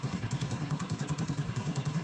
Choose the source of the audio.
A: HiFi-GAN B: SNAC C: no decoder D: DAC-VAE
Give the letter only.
B